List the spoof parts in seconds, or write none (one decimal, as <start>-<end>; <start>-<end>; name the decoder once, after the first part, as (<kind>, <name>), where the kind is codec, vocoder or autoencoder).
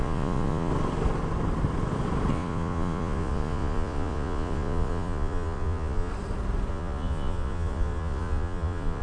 0.0-0.7 (vocoder, Vocos); 2.3-6.1; 6.7-9.0